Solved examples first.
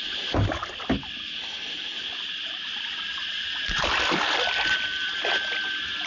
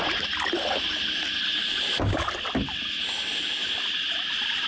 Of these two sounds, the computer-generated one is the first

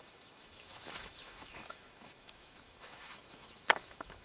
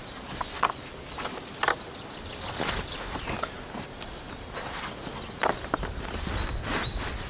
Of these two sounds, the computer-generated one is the first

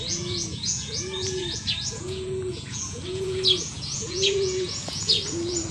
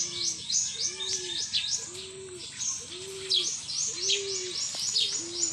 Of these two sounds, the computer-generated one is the first